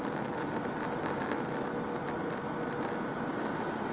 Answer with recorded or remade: recorded